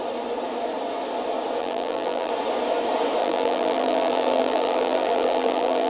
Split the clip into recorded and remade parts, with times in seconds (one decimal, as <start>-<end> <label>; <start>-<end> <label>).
0.0-1.6 recorded; 1.6-2.3 remade; 2.3-3.2 recorded; 3.2-5.9 remade